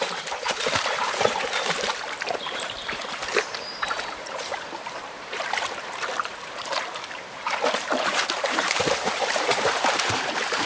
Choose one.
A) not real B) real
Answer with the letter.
A